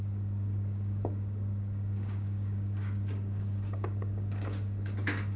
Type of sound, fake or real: fake